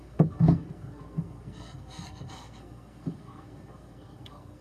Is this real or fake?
fake